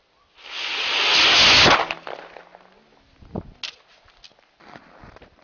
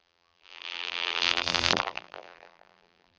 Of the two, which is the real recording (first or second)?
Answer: first